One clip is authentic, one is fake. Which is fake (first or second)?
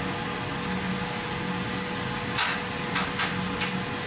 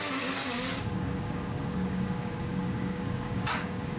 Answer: second